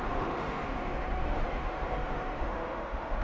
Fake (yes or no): yes